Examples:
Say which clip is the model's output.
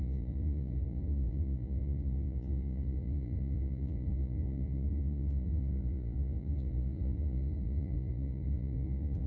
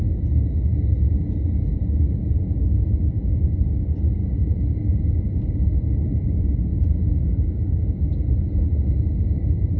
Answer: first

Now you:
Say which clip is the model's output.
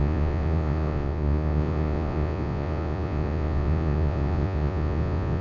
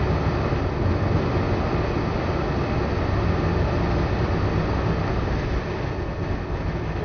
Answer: first